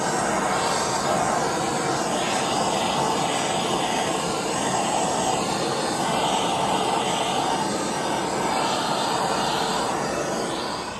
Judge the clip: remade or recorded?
recorded